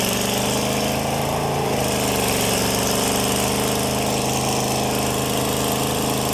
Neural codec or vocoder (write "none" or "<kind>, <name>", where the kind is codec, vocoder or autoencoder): none